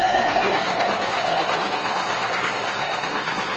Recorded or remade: remade